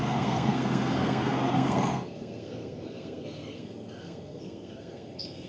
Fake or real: fake